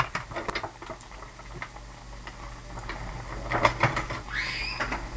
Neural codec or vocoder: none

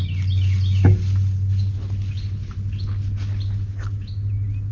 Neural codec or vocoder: none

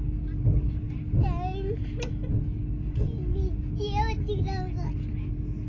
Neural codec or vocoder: none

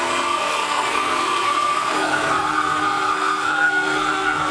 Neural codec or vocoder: codec, SNAC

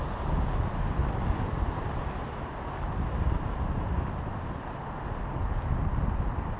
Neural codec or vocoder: none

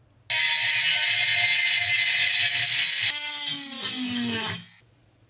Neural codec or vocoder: none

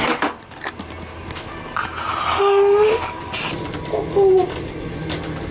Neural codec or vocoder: none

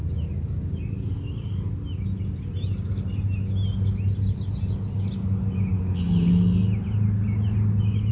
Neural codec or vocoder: none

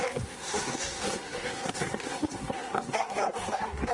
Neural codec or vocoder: codec, SNAC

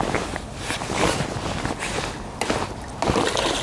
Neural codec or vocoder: none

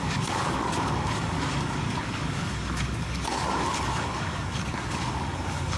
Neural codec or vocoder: codec, DAC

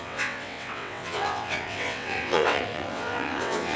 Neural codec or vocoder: vocoder, WaveNeXt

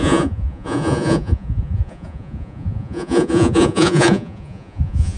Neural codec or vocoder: vocoder, Vocos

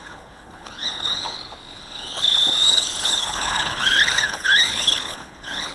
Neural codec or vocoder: codec, HILCodec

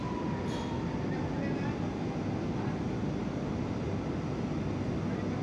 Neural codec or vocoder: none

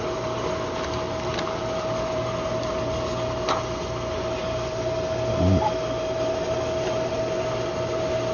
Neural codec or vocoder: none